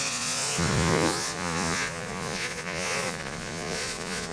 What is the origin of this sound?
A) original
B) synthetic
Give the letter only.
B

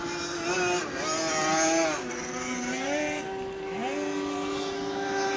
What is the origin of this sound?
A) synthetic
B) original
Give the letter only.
B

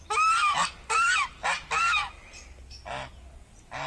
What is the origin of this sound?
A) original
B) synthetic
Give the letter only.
A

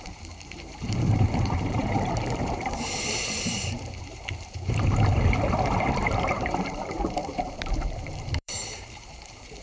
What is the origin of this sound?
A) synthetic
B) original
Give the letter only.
A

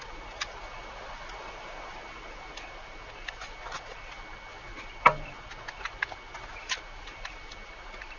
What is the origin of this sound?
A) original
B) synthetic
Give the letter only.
A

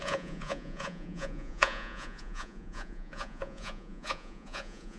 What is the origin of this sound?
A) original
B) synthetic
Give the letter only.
B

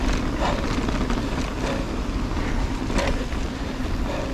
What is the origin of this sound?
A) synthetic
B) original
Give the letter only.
B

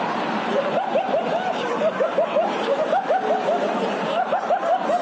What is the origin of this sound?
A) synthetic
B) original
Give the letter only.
B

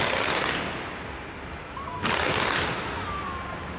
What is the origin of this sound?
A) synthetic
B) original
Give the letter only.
B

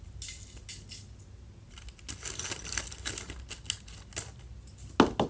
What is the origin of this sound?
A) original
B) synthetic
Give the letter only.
A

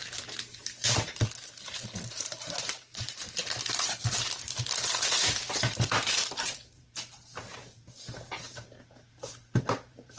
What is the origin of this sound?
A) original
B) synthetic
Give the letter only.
B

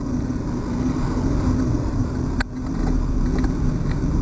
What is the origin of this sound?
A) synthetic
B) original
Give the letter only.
B